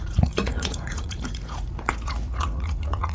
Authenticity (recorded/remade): remade